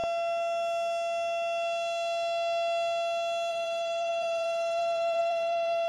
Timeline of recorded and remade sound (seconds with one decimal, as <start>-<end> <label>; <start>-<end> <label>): 0.0-3.5 recorded; 3.5-5.9 remade